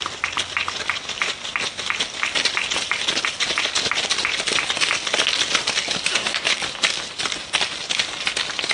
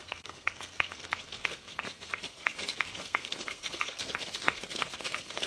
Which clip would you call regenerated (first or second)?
second